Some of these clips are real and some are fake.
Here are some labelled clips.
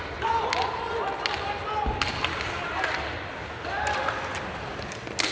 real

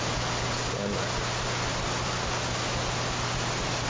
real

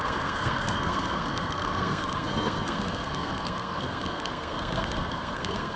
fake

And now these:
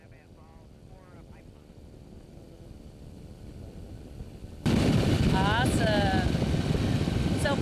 real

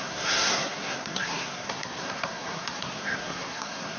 fake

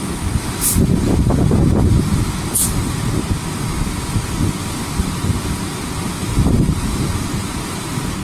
real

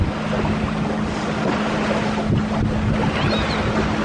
real